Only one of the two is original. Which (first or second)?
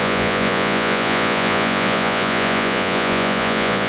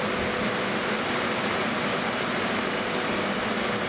second